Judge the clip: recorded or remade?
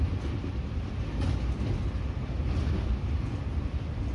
recorded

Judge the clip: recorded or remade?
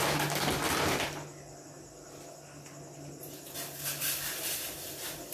recorded